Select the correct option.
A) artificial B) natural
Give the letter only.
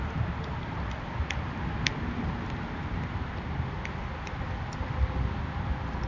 B